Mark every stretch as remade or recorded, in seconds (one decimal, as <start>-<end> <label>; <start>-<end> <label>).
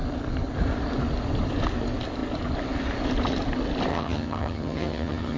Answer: 0.0-3.9 recorded; 3.9-5.4 remade